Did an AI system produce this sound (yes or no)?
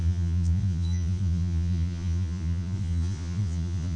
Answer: yes